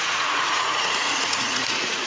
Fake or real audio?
fake